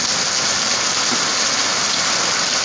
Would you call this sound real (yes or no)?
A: yes